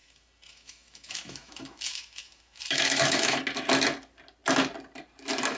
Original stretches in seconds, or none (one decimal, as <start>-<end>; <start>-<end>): 3.4-5.6